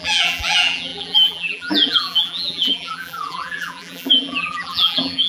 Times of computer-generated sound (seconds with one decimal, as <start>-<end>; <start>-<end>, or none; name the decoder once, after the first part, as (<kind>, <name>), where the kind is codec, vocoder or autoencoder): 0.0-5.3 (vocoder, BigVGAN v2)

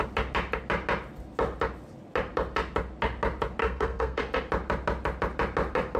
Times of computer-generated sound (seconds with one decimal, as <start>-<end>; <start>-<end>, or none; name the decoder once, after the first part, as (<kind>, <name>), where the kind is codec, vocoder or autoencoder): 3.6-4.2 (codec, SNAC)

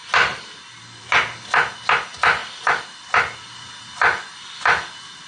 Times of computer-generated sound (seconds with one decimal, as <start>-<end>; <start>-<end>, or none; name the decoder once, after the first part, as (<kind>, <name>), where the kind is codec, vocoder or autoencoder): none

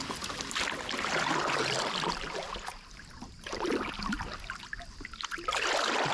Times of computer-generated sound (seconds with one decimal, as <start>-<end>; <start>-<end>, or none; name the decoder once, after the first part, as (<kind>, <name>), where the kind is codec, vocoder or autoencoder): 2.7-3.7 (vocoder, BigVGAN v2)

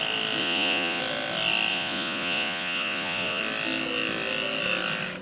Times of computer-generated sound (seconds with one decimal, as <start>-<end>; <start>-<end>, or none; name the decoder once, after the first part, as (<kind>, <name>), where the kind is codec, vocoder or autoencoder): 0.4-1.0 (vocoder, Vocos); 1.7-3.4

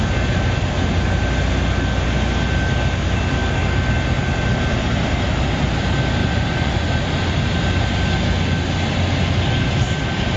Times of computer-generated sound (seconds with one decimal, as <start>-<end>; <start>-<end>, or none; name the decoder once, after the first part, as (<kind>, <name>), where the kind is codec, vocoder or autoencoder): 6.2-6.9 (vocoder, Vocos)

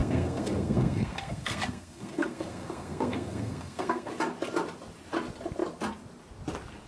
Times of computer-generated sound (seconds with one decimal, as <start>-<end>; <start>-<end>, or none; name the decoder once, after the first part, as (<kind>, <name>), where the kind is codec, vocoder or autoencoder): 0.0-4.1 (codec, SNAC)